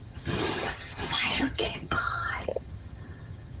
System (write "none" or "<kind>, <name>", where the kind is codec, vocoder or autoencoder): vocoder, HiFi-GAN